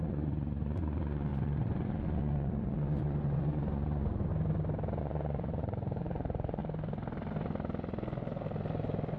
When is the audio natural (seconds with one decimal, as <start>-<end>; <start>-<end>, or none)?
4.3-5.0; 6.6-9.2